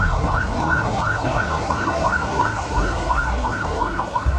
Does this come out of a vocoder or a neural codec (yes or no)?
yes